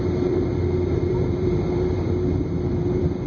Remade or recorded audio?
remade